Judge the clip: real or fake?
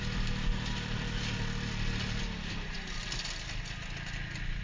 real